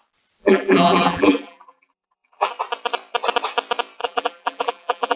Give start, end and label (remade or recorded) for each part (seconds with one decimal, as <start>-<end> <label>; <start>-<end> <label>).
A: 0.0-0.4 recorded; 0.4-2.5 remade; 2.5-4.0 recorded; 4.0-5.2 remade